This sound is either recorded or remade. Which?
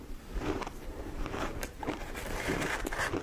remade